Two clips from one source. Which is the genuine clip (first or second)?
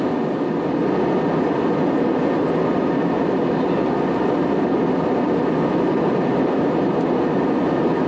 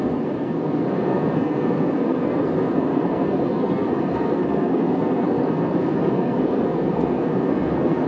first